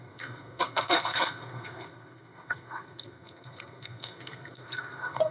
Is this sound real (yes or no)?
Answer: no